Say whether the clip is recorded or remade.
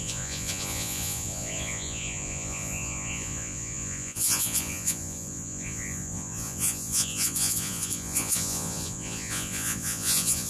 remade